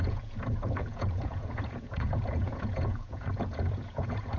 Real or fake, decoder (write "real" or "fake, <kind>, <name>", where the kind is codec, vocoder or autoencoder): fake, vocoder, Vocos